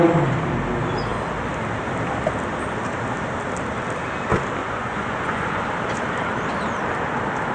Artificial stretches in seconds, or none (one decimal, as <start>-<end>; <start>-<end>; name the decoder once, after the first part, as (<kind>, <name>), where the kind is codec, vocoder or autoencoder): 4.6-5.6 (vocoder, Vocos)